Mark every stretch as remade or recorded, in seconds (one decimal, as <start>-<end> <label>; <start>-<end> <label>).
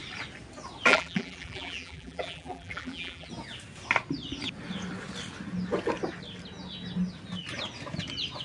0.0-0.9 recorded; 0.9-3.3 remade; 3.3-8.4 recorded